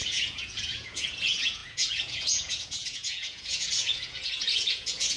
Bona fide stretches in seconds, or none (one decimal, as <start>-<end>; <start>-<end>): none